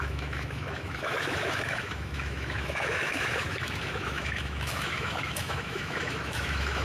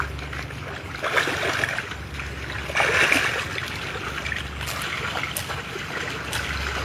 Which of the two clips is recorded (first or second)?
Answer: second